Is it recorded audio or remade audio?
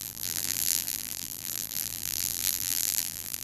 remade